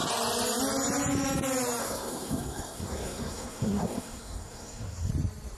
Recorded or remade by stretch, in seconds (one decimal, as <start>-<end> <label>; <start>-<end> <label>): 0.0-1.8 recorded; 1.8-5.1 remade; 5.1-5.6 recorded